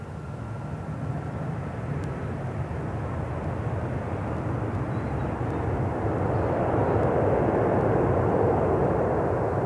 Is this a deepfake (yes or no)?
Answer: no